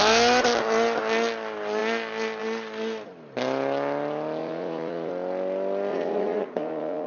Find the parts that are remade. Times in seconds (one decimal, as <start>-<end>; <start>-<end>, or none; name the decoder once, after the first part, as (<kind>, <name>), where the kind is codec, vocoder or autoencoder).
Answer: 4.4-5.1 (vocoder, Vocos); 5.9-7.1